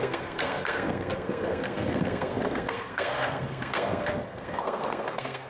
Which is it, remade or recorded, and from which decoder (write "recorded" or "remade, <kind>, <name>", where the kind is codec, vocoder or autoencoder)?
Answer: remade, codec, SNAC